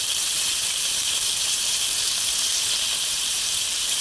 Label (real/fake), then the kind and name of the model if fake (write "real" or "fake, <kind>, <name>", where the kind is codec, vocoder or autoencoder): fake, vocoder, BigVGAN v2